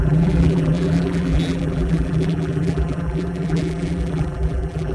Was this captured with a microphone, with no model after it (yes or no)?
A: no